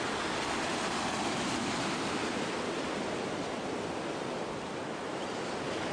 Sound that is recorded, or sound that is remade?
recorded